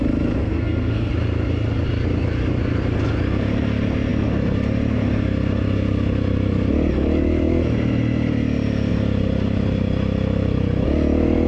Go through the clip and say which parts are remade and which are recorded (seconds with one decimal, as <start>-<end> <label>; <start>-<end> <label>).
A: 0.0-0.4 recorded; 0.4-1.1 remade; 1.1-11.5 recorded